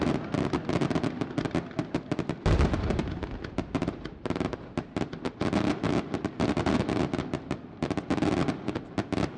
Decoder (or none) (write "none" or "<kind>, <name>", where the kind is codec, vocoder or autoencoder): none